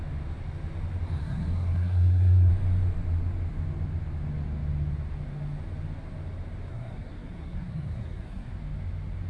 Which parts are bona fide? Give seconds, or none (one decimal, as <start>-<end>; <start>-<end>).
0.0-1.2; 2.5-6.7; 8.5-9.3